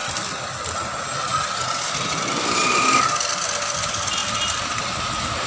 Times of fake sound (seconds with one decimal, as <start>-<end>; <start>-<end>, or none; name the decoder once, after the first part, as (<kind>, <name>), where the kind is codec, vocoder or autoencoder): 1.3-2.3 (vocoder, BigVGAN v2)